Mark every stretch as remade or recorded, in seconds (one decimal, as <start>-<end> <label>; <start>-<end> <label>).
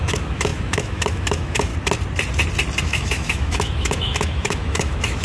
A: 0.0-1.7 remade; 1.7-2.8 recorded; 2.8-5.2 remade